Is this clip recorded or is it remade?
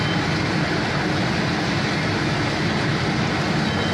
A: recorded